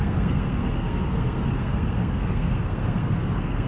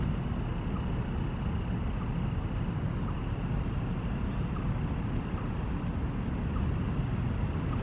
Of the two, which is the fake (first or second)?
first